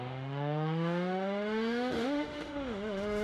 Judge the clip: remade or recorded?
remade